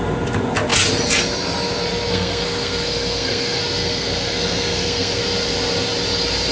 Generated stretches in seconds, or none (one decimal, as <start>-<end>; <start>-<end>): 2.1-5.2